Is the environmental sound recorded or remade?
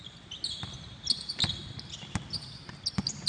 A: recorded